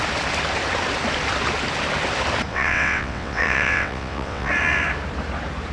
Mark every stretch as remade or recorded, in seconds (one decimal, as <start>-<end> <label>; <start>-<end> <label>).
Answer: 0.0-2.5 recorded; 2.5-4.5 remade; 4.5-5.7 recorded

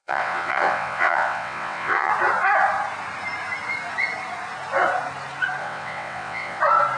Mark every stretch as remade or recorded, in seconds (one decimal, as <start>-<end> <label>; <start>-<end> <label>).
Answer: 0.0-2.1 remade; 2.1-5.6 recorded; 5.6-6.6 remade; 6.6-7.0 recorded

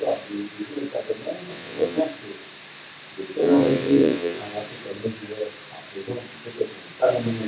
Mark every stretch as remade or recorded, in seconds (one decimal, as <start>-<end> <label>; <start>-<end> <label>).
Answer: 0.0-1.5 recorded; 1.5-2.0 remade; 2.0-3.4 recorded; 3.4-4.4 remade; 4.4-7.5 recorded